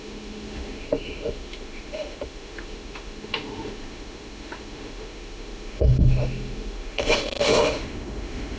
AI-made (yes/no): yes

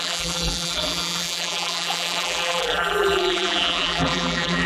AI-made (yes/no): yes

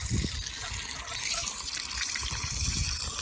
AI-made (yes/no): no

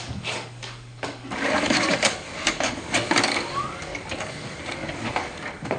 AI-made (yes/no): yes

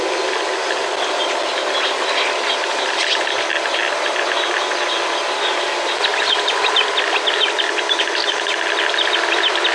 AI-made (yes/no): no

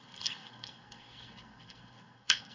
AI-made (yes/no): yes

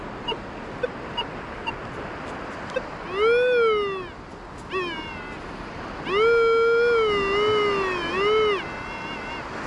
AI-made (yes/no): no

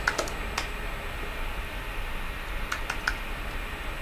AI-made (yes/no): no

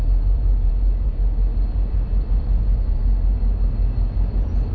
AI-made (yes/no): yes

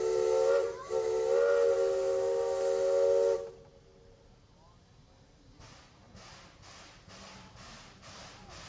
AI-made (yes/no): no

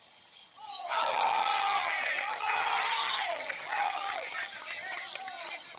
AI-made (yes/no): yes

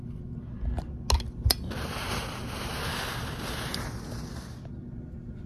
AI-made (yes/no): no